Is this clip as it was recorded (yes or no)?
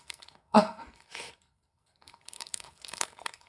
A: no